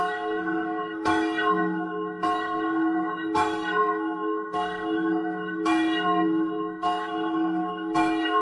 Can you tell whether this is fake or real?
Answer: fake